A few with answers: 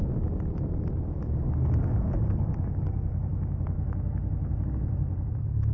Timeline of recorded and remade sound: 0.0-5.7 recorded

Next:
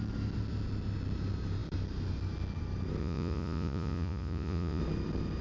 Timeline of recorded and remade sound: 0.0-3.0 recorded; 3.0-4.8 remade; 4.8-5.4 recorded

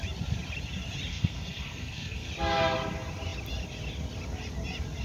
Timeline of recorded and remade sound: 0.0-1.1 recorded; 1.1-2.3 remade; 2.3-5.0 recorded